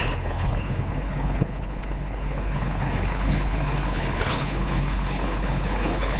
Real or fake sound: fake